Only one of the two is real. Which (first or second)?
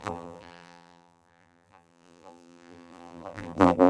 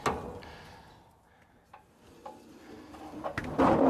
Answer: second